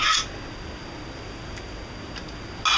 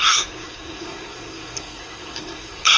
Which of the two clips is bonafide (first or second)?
first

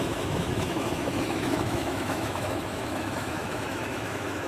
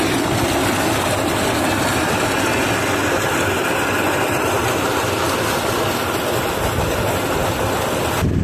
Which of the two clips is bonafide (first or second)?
second